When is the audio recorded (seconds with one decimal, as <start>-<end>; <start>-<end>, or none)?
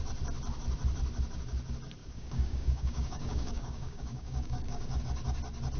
0.0-2.0; 5.0-5.8